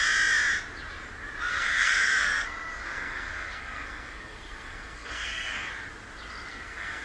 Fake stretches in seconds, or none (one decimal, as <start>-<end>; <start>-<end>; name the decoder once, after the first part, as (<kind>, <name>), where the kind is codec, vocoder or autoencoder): 1.5-5.7 (codec, SNAC); 6.5-7.0

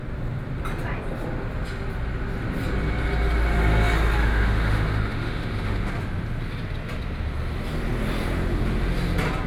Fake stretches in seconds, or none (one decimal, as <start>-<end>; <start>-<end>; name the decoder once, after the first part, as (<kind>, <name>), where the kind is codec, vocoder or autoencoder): 4.2-5.9 (autoencoder, DAC-VAE)